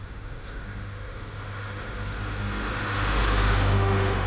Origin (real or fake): fake